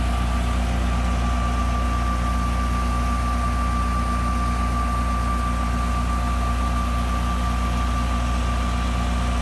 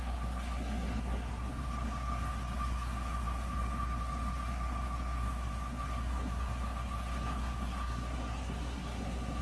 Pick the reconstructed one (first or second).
second